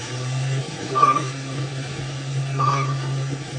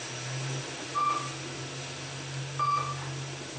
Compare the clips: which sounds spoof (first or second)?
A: first